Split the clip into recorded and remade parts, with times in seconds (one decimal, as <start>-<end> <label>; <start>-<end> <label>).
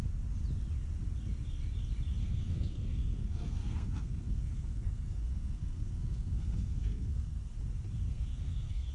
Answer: 0.0-2.2 recorded; 2.2-7.4 remade; 7.4-8.1 recorded; 8.1-8.9 remade